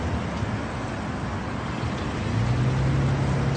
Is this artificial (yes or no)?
no